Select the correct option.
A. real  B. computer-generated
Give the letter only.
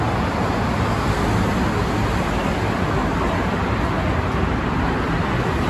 A